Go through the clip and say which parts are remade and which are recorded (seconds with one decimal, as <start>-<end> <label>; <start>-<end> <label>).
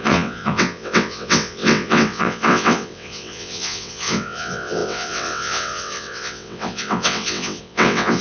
0.0-8.2 remade